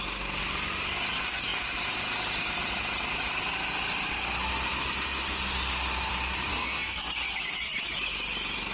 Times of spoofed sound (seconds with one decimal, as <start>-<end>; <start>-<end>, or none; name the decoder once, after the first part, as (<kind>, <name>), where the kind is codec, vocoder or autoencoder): 6.5-7.0 (codec, SNAC)